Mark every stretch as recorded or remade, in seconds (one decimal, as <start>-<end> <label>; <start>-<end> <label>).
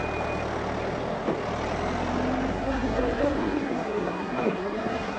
0.0-2.5 recorded; 2.5-5.2 remade